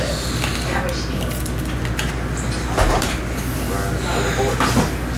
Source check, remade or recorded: recorded